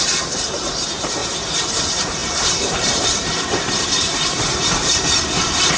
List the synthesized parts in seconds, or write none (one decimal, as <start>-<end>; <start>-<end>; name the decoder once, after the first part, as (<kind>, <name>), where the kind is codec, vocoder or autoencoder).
0.0-1.2 (vocoder, BigVGAN v2); 1.7-5.8